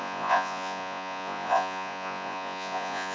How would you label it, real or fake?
fake